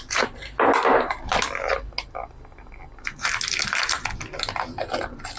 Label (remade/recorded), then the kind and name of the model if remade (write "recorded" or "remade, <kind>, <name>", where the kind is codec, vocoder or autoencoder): recorded